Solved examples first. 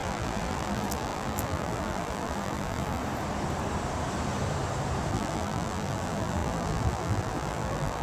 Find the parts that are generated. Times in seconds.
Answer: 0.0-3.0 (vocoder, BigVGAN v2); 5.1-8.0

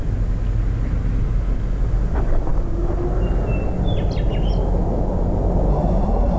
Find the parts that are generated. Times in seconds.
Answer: 5.7-6.4 (codec, SNAC)

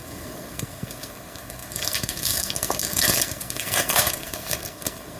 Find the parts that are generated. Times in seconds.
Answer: 0.0-5.2 (codec, SNAC)

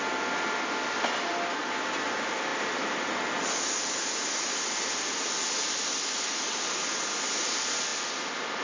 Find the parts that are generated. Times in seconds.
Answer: none

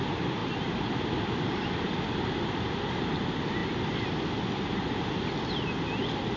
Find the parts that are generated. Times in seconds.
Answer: 0.4-2.8 (vocoder, BigVGAN v2)

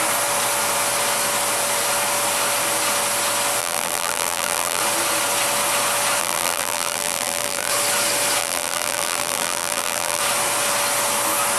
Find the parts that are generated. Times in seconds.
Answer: 3.6-4.8 (vocoder, BigVGAN v2); 6.2-7.7; 8.4-10.2

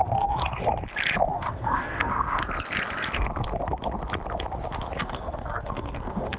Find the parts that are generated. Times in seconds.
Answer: 0.0-0.4 (codec, SNAC); 1.3-2.4; 5.0-6.4

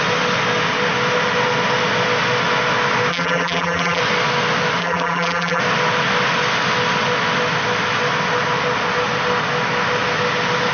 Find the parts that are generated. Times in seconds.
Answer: 3.1-4.0 (vocoder, BigVGAN v2); 4.8-5.6